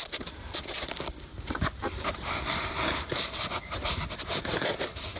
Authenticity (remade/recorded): recorded